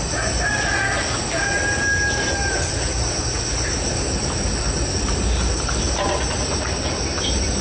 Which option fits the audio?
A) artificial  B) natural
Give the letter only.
B